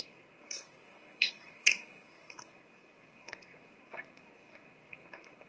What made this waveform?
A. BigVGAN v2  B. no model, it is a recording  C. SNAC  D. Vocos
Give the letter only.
C